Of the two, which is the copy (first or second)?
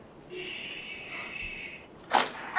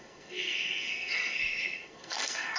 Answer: second